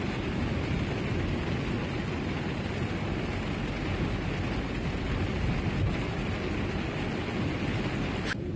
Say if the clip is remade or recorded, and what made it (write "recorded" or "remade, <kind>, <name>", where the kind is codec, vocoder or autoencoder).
recorded